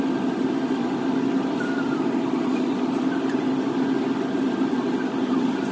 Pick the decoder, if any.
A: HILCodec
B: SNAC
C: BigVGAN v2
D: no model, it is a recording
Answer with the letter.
D